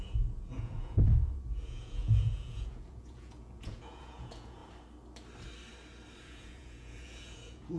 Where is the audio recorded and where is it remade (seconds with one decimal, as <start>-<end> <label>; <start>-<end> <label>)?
0.0-4.6 remade; 4.6-6.2 recorded; 6.2-7.8 remade